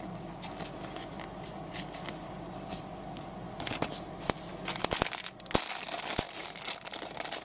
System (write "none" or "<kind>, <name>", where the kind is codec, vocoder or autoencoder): none